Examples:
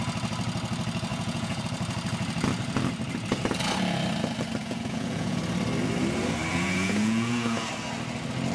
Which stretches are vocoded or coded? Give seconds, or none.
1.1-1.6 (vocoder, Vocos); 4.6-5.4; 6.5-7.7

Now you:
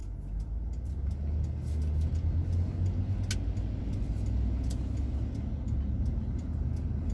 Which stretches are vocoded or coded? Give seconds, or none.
none

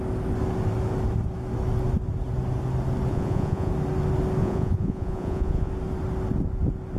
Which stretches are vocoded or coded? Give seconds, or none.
3.1-3.7 (vocoder, Vocos); 4.4-5.7

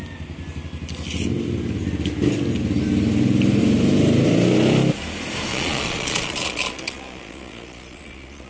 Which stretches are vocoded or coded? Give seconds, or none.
5.5-8.5 (vocoder, Vocos)

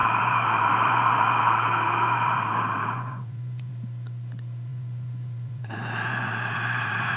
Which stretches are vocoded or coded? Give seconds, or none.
0.0-3.7 (vocoder, Vocos); 4.7-7.2

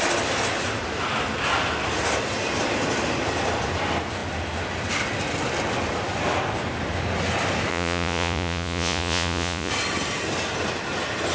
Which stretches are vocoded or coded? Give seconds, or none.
7.7-9.7 (vocoder, Vocos)

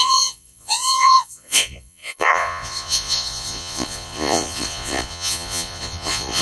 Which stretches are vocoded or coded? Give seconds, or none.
0.0-6.4 (vocoder, Vocos)